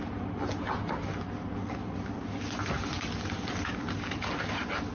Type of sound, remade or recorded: recorded